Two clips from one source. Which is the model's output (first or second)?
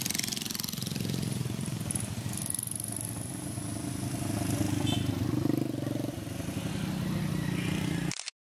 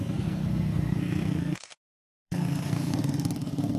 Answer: second